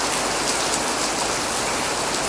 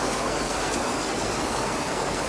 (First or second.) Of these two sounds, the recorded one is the first